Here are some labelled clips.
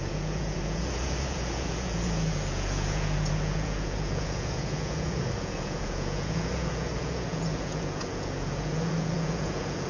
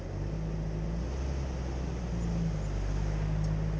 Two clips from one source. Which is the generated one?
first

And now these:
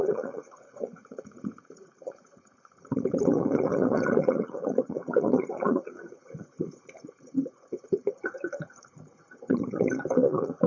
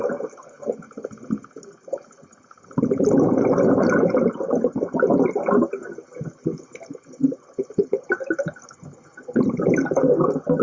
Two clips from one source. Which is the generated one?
first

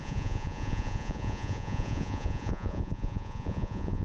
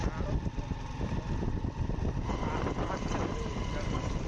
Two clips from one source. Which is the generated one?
first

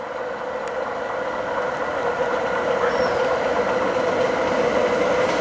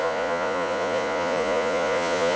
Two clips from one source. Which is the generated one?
second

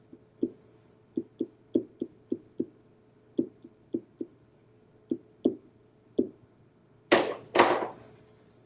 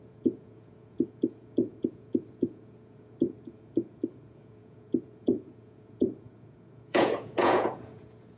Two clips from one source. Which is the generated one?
second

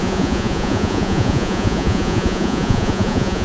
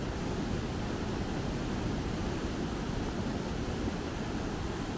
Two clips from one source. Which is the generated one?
first